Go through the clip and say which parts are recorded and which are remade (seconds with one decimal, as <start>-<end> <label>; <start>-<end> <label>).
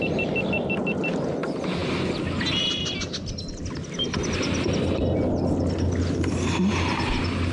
0.0-7.5 recorded